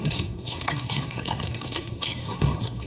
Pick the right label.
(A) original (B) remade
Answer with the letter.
B